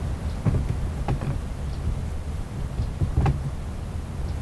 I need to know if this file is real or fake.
fake